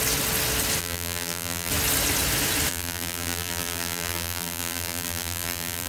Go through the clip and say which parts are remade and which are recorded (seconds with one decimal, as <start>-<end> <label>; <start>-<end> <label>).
0.0-0.8 recorded; 0.8-1.7 remade; 1.7-2.7 recorded; 2.7-5.9 remade